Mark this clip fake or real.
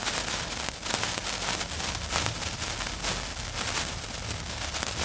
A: real